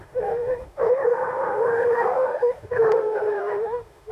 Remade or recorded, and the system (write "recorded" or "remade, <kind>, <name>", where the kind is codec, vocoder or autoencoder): remade, autoencoder, DAC-VAE